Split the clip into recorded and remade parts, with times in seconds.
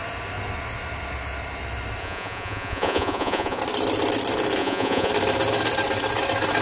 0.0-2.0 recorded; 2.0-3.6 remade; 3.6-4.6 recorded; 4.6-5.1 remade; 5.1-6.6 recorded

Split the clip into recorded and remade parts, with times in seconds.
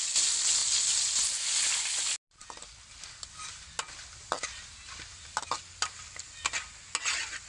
0.0-7.5 recorded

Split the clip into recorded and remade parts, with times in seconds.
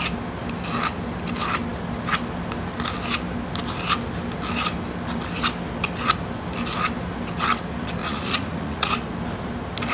0.0-8.0 recorded; 8.0-8.9 remade; 8.9-9.9 recorded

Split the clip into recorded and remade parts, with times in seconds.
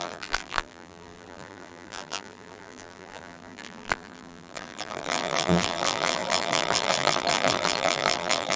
0.0-8.6 remade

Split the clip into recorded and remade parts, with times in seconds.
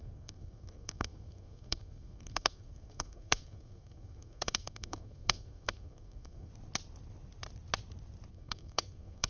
0.0-6.5 remade; 6.5-8.3 recorded; 8.3-9.3 remade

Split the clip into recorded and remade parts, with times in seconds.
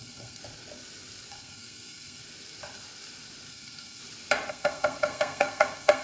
0.0-0.4 remade; 0.4-1.3 recorded; 1.3-2.2 remade; 2.2-3.5 recorded; 3.5-4.0 remade; 4.0-4.5 recorded; 4.5-6.0 remade